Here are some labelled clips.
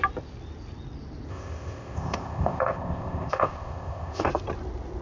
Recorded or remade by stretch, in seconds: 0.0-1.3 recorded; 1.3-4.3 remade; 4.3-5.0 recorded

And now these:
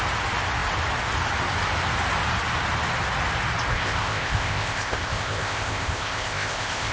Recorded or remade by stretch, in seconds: 0.0-3.7 recorded; 3.7-6.9 remade

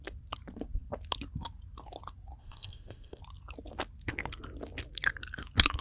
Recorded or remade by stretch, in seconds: 0.0-2.4 recorded; 2.4-3.2 remade; 3.2-5.8 recorded

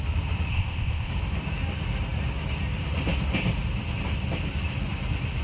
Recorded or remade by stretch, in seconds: 0.0-0.5 recorded; 0.5-1.1 remade; 1.1-5.4 recorded

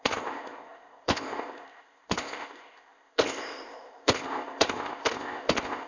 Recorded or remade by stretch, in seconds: 0.0-5.9 remade

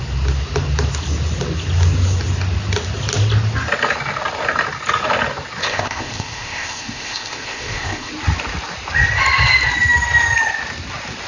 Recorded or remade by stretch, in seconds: 0.0-5.6 recorded; 5.6-8.1 remade; 8.1-11.3 recorded

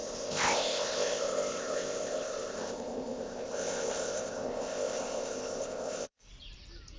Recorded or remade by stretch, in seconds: 0.0-6.3 remade; 6.3-7.0 recorded

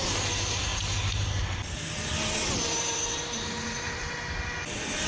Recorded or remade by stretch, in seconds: 0.0-5.1 recorded